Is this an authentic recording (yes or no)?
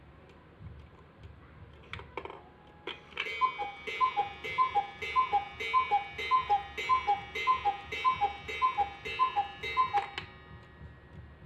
yes